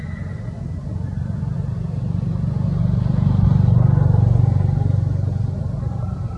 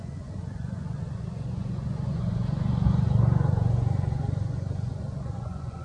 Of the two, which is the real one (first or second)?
first